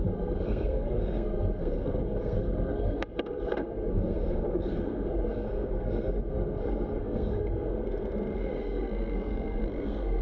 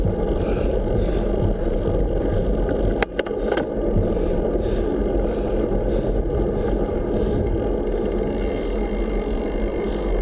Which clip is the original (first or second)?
second